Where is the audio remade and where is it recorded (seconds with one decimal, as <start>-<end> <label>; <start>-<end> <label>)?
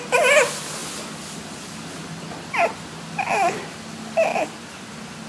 0.0-4.3 recorded; 4.3-5.3 remade